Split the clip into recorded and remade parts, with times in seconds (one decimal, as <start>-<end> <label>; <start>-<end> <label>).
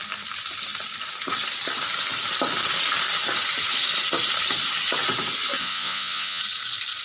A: 0.0-5.6 recorded; 5.6-6.4 remade; 6.4-7.0 recorded